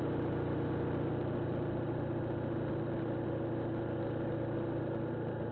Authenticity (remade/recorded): recorded